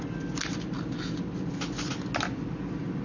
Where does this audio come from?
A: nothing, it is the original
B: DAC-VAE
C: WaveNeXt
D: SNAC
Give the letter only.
A